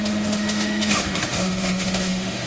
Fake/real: fake